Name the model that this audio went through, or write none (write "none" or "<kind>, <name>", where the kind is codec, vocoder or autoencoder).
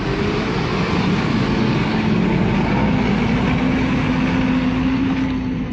none